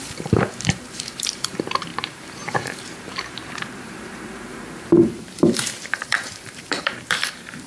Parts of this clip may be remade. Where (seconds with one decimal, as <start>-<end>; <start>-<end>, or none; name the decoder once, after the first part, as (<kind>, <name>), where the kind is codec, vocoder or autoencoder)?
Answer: 0.0-7.7 (vocoder, BigVGAN v2)